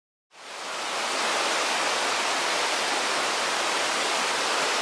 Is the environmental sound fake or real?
real